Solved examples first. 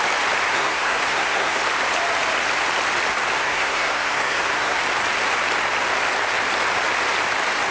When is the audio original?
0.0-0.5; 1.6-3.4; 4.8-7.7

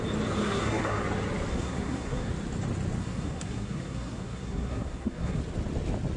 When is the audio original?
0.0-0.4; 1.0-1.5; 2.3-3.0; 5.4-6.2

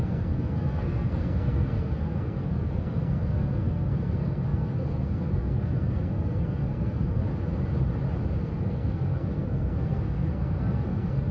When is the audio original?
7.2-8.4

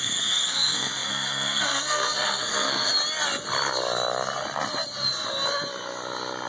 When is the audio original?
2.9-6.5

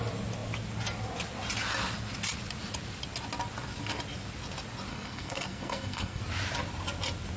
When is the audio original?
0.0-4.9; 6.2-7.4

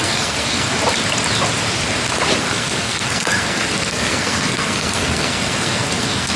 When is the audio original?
0.7-2.4

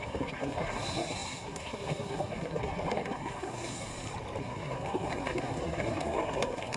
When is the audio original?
3.9-4.4